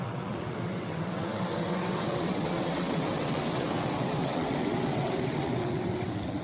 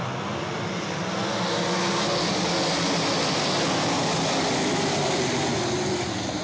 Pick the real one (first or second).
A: second